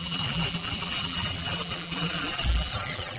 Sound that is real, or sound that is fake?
fake